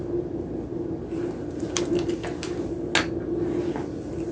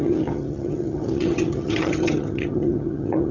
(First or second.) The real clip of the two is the first